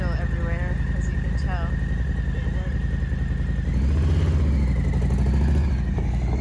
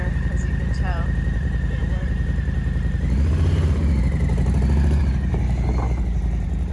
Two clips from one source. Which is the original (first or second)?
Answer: first